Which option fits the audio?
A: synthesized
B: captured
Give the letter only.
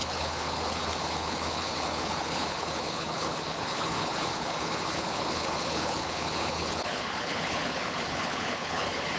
A